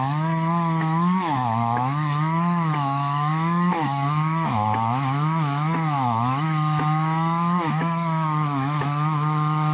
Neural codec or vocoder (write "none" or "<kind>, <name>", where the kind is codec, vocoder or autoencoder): autoencoder, DAC-VAE